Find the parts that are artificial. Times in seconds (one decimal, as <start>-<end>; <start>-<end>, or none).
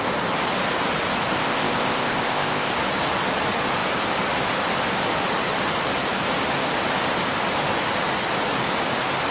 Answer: 1.4-2.7